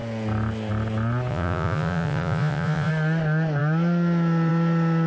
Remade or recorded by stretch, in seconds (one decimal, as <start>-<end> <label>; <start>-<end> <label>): 0.0-1.3 recorded; 1.3-2.9 remade; 2.9-5.1 recorded